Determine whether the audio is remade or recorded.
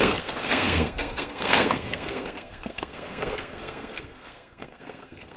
remade